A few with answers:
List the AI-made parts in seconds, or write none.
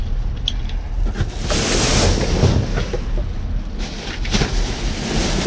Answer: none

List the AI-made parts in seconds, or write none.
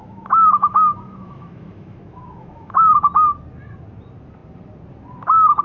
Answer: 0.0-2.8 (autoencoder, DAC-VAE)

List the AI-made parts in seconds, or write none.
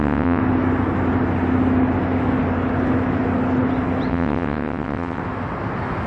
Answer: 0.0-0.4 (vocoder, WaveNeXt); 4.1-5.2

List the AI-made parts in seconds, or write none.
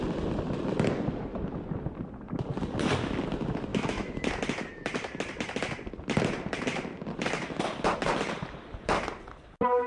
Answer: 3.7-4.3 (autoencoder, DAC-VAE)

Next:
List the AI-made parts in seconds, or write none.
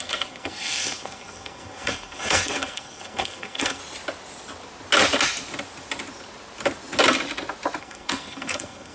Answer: 0.0-3.8 (codec, SNAC); 7.8-8.9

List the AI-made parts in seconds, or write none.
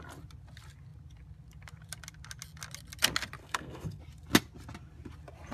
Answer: 3.4-4.0 (codec, SNAC)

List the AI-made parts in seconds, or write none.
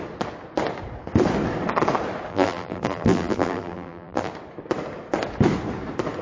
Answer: 2.3-4.3 (vocoder, BigVGAN v2)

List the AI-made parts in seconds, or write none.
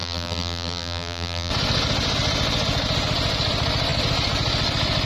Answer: 0.0-1.5 (vocoder, BigVGAN v2)